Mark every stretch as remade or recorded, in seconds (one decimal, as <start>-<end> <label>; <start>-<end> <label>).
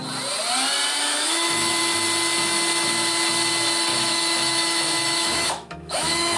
0.0-1.0 recorded; 1.0-1.8 remade; 1.8-3.9 recorded; 3.9-6.4 remade